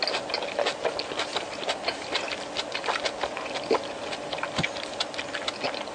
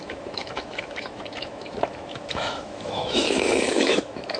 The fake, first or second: second